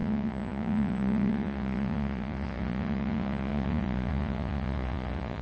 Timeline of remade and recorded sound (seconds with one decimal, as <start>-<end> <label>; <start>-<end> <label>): 0.0-5.4 remade